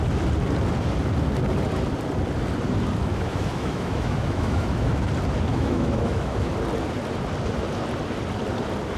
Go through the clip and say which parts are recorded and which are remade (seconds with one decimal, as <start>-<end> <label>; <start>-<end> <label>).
0.0-3.0 recorded; 3.0-5.1 remade; 5.1-5.5 recorded; 5.5-6.5 remade; 6.5-9.0 recorded